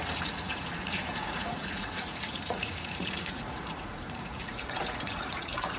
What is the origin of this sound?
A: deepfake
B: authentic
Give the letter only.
A